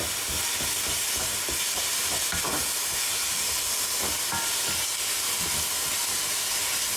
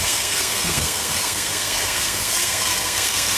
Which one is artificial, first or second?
second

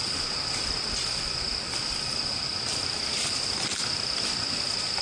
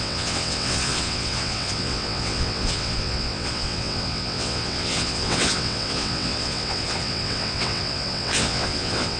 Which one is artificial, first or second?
second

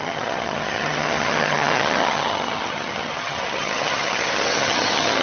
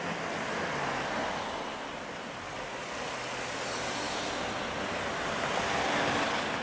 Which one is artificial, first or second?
first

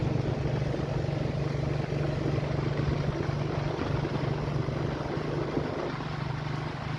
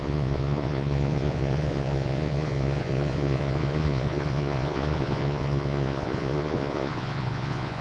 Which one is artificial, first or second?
second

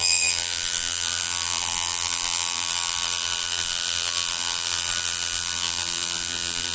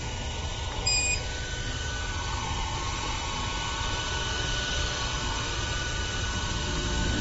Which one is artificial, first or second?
first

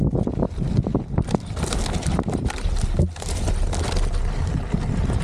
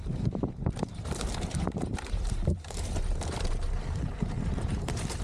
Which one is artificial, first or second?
second